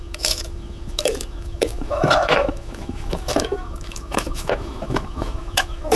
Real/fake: fake